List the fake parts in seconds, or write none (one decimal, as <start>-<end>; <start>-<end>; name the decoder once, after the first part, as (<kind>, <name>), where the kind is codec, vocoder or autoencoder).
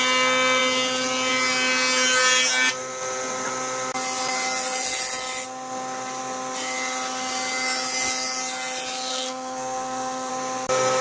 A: 9.1-10.3 (codec, SNAC)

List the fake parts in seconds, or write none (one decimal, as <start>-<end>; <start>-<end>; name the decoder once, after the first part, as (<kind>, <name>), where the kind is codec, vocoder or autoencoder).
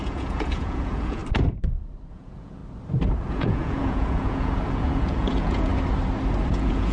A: 0.0-1.2 (vocoder, Vocos); 2.1-2.6; 3.3-5.7; 6.5-6.9